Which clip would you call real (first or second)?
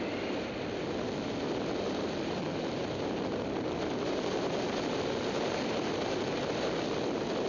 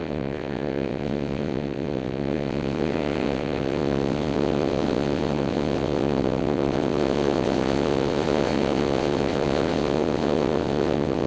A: first